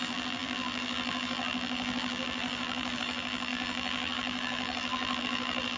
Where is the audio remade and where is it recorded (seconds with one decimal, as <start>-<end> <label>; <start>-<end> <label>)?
0.0-5.8 remade